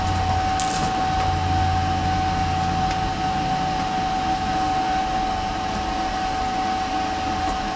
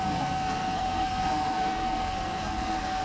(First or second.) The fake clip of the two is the second